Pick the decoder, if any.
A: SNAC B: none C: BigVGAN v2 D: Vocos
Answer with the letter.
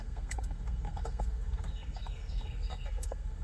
A